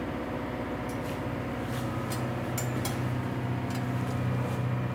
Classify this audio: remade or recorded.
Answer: recorded